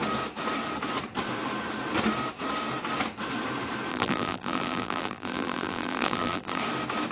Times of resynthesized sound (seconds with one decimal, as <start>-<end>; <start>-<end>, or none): 3.9-6.6